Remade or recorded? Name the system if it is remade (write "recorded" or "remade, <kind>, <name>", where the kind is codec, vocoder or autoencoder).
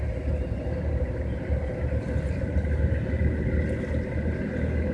recorded